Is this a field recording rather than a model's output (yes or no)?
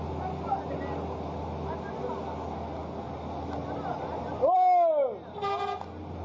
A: yes